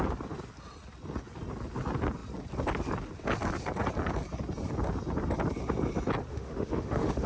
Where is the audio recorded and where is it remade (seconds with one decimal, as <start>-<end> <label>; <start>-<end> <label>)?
0.0-6.3 recorded; 6.3-7.3 remade